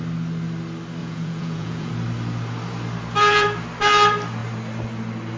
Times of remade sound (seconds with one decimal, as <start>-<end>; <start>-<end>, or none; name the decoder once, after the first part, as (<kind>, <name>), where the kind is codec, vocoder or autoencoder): 1.0-1.9 (vocoder, Vocos)